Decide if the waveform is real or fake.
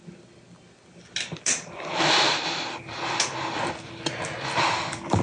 real